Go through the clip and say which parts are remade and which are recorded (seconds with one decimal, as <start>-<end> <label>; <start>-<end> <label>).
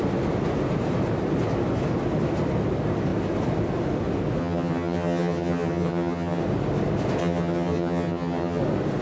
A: 0.0-4.4 recorded; 4.4-6.4 remade; 6.4-7.2 recorded; 7.2-8.6 remade; 8.6-9.0 recorded